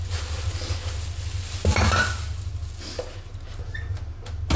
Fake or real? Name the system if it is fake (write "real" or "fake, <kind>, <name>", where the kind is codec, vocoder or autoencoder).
real